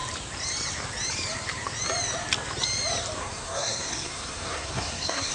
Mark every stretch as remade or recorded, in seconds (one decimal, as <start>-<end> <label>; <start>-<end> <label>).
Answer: 0.0-3.2 recorded; 3.2-5.3 remade